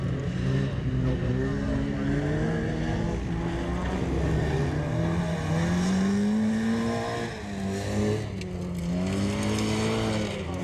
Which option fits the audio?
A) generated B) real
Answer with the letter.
B